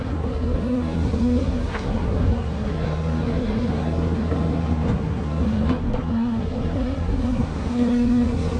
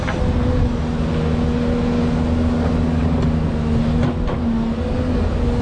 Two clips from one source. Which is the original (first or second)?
second